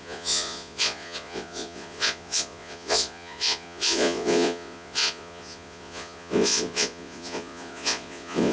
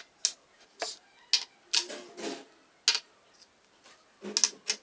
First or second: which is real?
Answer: second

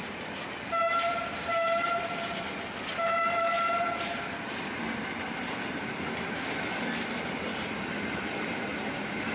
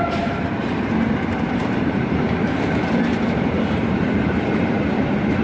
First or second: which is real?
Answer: first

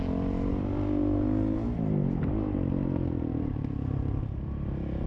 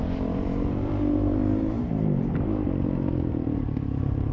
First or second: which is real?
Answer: first